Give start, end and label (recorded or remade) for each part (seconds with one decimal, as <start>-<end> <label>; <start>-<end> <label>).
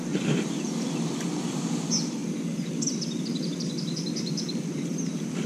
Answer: 0.0-2.2 remade; 2.2-2.9 recorded; 2.9-5.5 remade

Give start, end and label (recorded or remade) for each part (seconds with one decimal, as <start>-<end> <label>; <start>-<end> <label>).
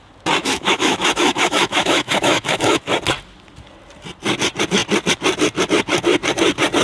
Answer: 0.0-0.4 recorded; 0.4-2.8 remade; 2.8-6.8 recorded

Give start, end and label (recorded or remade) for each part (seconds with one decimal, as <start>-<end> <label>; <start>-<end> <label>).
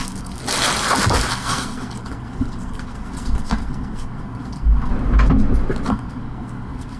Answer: 0.0-0.4 remade; 0.4-1.3 recorded; 1.3-4.9 remade; 4.9-5.9 recorded; 5.9-7.0 remade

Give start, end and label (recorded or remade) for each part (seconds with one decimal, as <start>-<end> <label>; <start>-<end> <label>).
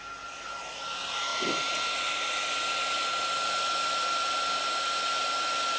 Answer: 0.0-5.8 recorded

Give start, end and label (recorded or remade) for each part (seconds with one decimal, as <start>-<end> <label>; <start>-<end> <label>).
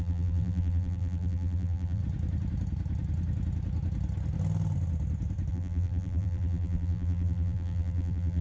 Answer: 0.0-2.0 remade; 2.0-5.5 recorded; 5.5-8.4 remade